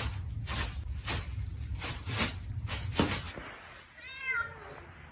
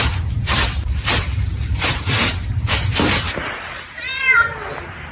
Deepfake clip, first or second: second